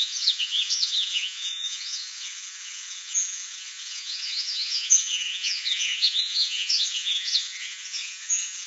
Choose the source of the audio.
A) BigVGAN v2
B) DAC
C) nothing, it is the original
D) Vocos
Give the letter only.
D